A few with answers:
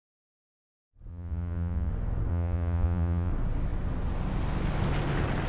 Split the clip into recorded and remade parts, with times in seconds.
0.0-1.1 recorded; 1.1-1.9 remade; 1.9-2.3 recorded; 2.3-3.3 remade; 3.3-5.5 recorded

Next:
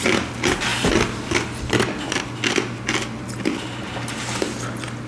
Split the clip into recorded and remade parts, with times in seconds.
0.0-5.1 recorded

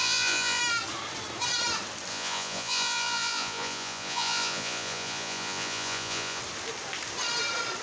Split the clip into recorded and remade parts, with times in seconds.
0.0-0.6 remade; 0.6-2.1 recorded; 2.1-6.4 remade; 6.4-7.8 recorded

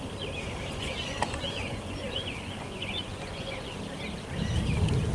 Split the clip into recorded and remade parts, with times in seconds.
0.0-0.7 recorded; 0.7-3.8 remade; 3.8-5.1 recorded